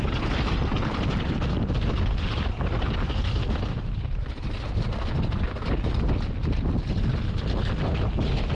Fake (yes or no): no